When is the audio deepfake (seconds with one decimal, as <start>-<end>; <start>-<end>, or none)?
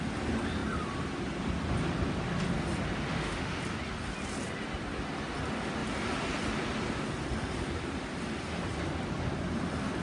3.1-3.6